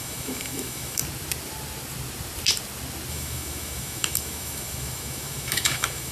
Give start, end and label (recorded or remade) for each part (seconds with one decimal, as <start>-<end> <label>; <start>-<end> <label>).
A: 0.0-1.0 remade; 1.0-3.1 recorded; 3.1-6.1 remade